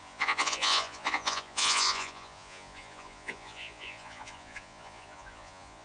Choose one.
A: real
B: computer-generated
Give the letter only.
B